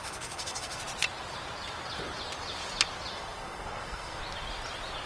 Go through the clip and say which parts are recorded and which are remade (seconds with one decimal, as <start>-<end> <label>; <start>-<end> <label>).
0.0-0.8 remade; 0.8-3.1 recorded; 3.1-4.2 remade; 4.2-5.1 recorded